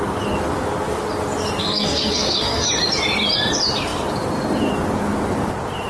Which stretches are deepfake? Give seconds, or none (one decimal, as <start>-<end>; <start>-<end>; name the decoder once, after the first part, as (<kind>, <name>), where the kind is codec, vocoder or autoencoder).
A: 1.6-2.7 (codec, SNAC)